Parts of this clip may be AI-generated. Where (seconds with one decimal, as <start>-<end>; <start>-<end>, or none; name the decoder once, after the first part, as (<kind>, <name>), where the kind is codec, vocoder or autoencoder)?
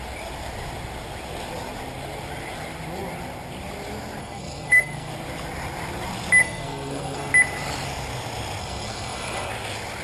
4.2-5.1 (codec, SNAC); 6.4-7.3; 8.6-9.5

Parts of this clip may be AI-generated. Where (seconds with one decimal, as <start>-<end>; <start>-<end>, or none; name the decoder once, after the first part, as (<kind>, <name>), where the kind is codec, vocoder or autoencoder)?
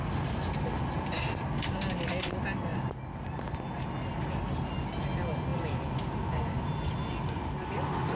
none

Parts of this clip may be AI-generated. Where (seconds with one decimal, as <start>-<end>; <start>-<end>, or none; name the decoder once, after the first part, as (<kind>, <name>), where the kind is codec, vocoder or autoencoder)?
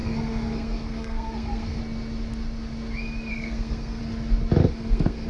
0.0-1.8 (codec, SNAC); 3.3-4.0; 4.6-5.3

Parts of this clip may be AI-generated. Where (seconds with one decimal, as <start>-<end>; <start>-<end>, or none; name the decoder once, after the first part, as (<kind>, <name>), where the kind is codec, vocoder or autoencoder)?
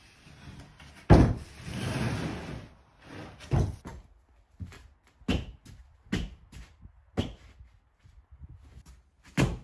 none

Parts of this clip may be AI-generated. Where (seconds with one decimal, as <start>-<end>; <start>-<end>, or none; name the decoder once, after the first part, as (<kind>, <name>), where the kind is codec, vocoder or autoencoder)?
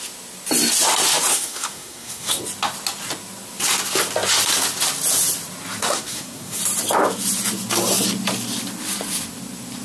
1.3-2.4 (codec, SNAC); 5.8-6.6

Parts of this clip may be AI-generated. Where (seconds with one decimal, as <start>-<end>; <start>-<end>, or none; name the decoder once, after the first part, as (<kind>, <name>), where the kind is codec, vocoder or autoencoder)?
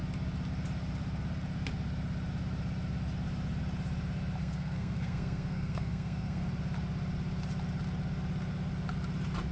4.4-6.5 (codec, SNAC)